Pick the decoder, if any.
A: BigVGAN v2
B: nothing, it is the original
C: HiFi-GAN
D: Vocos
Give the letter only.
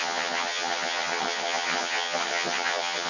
C